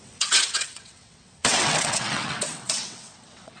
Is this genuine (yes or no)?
no